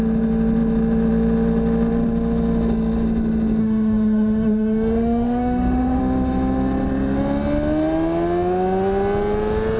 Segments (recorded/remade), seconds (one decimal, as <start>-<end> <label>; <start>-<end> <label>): 0.0-3.6 recorded; 3.6-6.0 remade; 6.0-9.8 recorded